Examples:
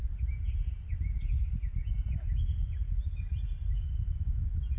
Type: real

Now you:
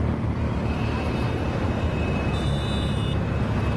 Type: real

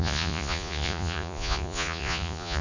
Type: fake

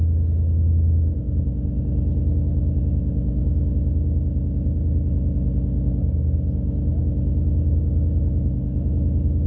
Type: real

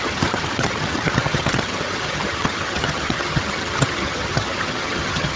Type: fake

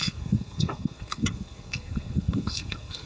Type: fake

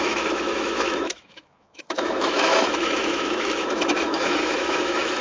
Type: fake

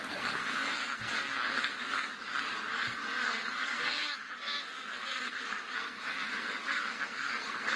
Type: fake